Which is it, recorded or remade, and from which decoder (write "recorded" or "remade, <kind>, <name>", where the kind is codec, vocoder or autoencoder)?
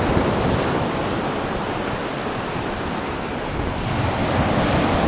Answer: recorded